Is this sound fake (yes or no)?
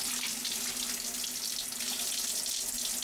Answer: no